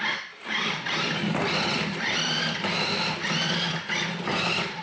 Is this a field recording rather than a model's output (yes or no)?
yes